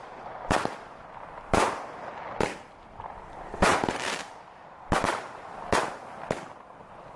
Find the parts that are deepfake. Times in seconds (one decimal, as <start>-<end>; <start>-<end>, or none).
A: none